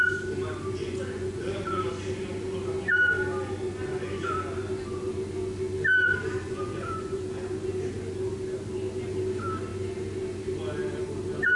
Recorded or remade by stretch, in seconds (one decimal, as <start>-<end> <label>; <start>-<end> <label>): 0.0-0.8 recorded; 0.8-1.8 remade; 1.8-3.9 recorded; 3.9-4.5 remade; 4.5-6.4 recorded; 6.4-7.2 remade; 7.2-11.6 recorded